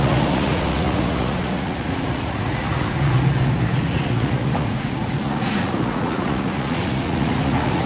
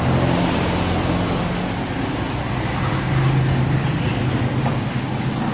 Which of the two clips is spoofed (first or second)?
first